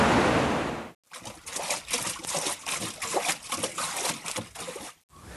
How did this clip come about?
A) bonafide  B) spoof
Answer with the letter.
A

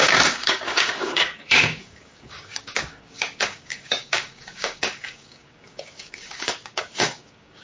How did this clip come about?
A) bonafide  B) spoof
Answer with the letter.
B